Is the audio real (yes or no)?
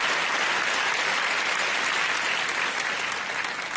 yes